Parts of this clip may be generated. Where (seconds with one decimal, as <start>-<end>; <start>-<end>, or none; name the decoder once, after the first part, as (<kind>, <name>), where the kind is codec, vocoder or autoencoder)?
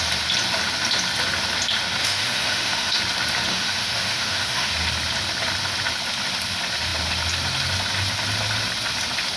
2.0-3.0 (autoencoder, DAC-VAE); 3.5-4.7